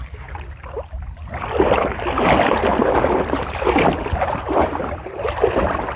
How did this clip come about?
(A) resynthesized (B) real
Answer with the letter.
B